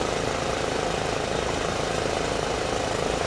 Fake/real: fake